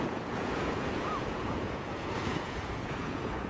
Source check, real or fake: fake